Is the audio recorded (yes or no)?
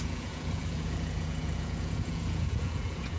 no